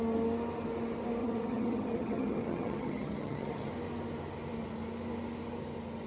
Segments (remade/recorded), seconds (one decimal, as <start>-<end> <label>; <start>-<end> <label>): 0.0-1.2 recorded; 1.2-3.7 remade; 3.7-6.1 recorded